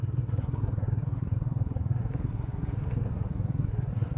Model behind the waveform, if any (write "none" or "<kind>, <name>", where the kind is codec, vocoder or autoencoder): codec, SNAC